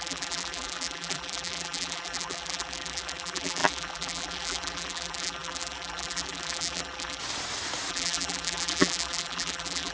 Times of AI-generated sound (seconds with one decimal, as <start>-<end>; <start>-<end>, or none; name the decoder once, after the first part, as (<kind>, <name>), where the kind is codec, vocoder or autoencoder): 0.0-7.2 (vocoder, BigVGAN v2); 7.9-9.9